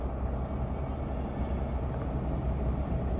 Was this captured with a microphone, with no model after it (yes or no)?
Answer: yes